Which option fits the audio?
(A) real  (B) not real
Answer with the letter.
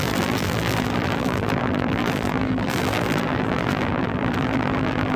B